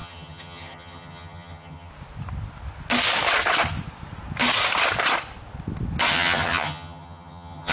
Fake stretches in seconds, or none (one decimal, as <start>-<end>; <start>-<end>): 0.0-1.9; 6.1-7.7